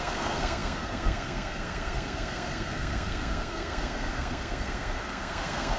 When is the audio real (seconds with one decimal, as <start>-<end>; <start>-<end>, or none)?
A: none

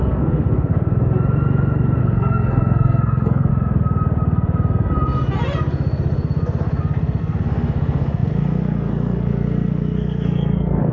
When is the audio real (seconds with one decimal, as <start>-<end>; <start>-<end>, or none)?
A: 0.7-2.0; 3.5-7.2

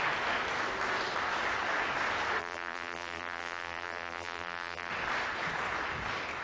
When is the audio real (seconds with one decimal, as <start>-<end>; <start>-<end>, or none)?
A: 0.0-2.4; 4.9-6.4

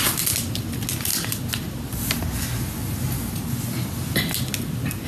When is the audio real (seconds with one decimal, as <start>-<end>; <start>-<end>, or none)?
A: 0.0-5.1

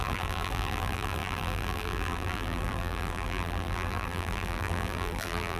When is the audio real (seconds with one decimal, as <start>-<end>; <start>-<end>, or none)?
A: none